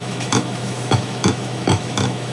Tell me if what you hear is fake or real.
fake